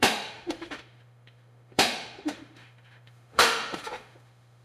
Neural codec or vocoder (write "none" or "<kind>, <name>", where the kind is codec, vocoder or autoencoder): autoencoder, DAC-VAE